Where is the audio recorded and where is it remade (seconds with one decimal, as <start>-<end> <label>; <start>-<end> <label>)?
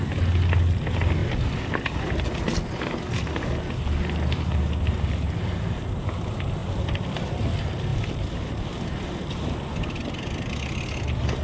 0.0-1.2 recorded; 1.2-2.4 remade; 2.4-6.6 recorded; 6.6-7.4 remade; 7.4-11.4 recorded